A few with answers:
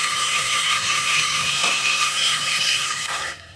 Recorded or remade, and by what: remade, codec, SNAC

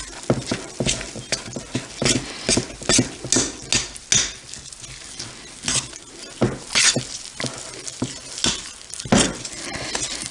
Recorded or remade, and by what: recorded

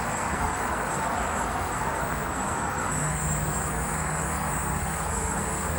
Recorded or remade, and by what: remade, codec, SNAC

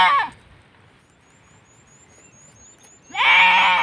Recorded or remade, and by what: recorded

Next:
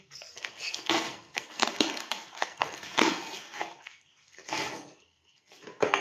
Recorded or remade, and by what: remade, codec, SNAC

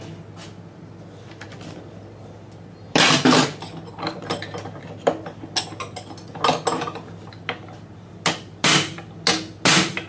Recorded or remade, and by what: recorded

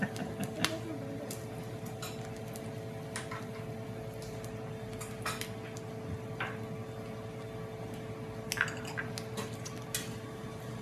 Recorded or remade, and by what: recorded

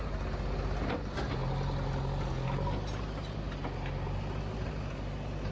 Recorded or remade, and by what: recorded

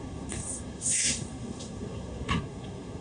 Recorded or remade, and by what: remade, codec, SNAC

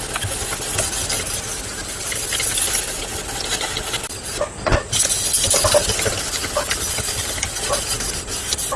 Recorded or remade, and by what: recorded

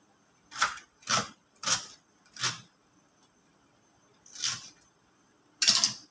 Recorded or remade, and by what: recorded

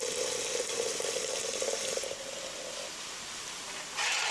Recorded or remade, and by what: recorded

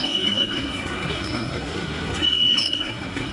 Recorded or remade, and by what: remade, codec, SNAC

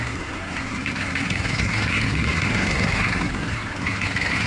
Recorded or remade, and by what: remade, codec, SNAC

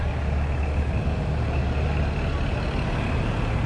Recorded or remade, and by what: recorded